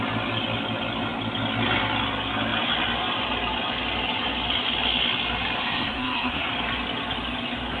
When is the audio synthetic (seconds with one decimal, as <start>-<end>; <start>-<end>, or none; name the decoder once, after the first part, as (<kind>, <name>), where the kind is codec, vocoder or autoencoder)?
5.6-6.5 (codec, SNAC)

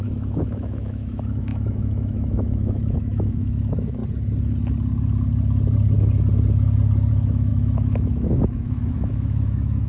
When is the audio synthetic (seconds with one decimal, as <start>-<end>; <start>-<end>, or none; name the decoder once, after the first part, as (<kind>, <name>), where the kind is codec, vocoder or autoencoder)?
0.0-4.0 (autoencoder, DAC-VAE); 7.1-9.9

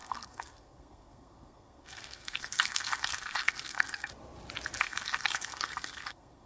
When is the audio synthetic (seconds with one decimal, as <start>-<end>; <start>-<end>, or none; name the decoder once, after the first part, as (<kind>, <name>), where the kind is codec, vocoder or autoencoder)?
0.0-4.1 (codec, SNAC); 4.8-6.5

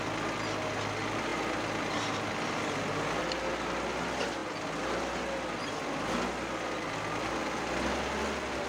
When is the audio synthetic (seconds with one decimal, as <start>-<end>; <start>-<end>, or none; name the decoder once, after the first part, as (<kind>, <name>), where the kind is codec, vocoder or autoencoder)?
none

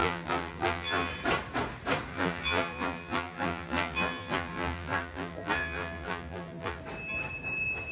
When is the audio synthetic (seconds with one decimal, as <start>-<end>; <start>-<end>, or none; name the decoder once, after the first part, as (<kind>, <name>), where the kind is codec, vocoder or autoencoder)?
0.0-1.1 (vocoder, BigVGAN v2); 2.1-6.8